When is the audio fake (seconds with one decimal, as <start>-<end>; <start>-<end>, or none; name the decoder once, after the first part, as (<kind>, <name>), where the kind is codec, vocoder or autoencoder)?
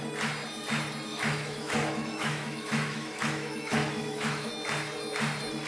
1.1-4.5 (autoencoder, DAC-VAE)